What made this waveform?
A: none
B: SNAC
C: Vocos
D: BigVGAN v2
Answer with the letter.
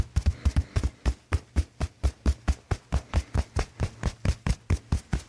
A